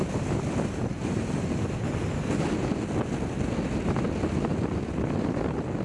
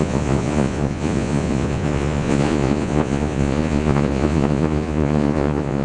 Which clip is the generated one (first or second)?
second